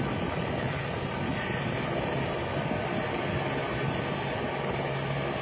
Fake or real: real